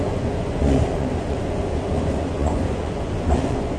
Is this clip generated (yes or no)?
yes